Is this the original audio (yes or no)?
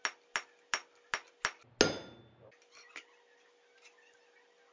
yes